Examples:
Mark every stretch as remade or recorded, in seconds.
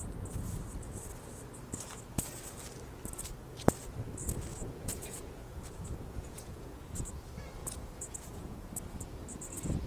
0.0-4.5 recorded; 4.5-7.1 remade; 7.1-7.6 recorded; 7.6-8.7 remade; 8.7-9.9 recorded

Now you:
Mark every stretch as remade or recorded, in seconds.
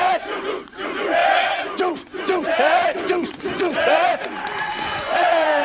0.0-5.6 remade